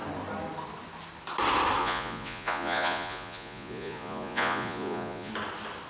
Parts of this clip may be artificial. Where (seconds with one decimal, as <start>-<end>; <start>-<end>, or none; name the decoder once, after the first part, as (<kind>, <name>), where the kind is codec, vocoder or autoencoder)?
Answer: 1.8-5.3 (vocoder, Vocos)